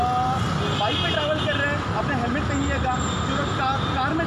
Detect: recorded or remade recorded